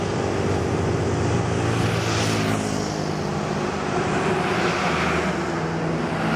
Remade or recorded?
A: recorded